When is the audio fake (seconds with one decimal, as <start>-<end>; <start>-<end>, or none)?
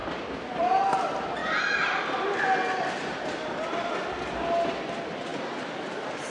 0.0-0.8